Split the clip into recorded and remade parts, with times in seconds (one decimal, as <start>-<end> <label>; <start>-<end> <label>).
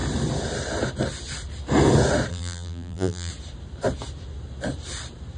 0.0-2.3 recorded; 2.3-3.3 remade; 3.3-5.4 recorded